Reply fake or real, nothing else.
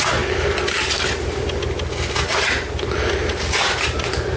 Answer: real